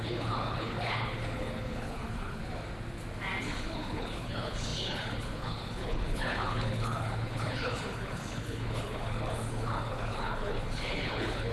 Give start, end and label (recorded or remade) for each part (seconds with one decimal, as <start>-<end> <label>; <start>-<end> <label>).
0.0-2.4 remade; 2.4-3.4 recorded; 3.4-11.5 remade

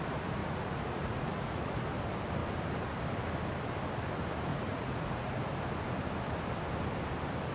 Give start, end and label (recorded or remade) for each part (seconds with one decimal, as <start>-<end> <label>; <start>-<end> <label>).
0.0-0.4 recorded; 0.4-1.8 remade; 1.8-4.5 recorded; 4.5-5.4 remade; 5.4-7.5 recorded

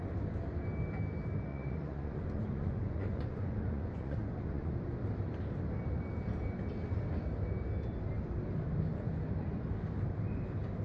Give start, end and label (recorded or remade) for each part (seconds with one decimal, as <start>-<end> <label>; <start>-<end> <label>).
0.0-1.5 recorded; 1.5-4.7 remade; 4.7-10.8 recorded